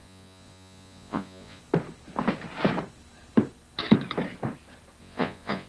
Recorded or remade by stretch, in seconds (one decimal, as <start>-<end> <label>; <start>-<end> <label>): 0.0-1.6 remade; 1.6-5.0 recorded; 5.0-5.7 remade